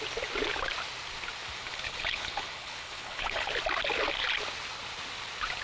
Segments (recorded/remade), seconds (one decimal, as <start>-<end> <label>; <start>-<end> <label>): 0.0-1.6 recorded; 1.6-3.5 remade; 3.5-5.6 recorded